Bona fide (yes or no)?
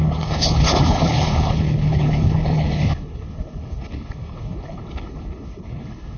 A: no